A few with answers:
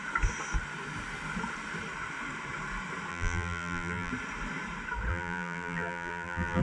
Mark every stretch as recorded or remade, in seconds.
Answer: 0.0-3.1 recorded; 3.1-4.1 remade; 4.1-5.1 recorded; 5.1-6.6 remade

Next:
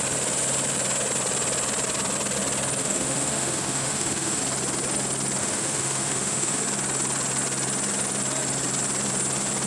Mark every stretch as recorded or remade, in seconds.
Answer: 0.0-2.8 recorded; 2.8-4.4 remade; 4.4-5.4 recorded; 5.4-6.6 remade; 6.6-9.7 recorded

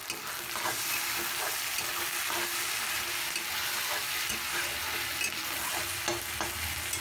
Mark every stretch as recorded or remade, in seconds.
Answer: 0.0-7.0 recorded

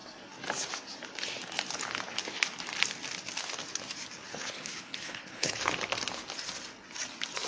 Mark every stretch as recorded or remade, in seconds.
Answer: 0.0-4.3 recorded; 4.3-5.7 remade; 5.7-7.5 recorded